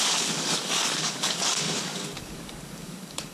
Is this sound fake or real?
fake